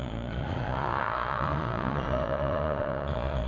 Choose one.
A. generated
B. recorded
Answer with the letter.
A